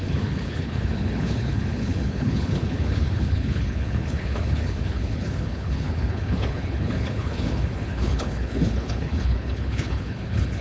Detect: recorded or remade remade